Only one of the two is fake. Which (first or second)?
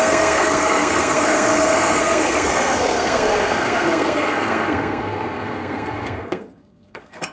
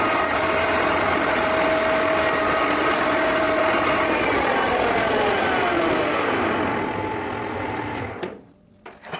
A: first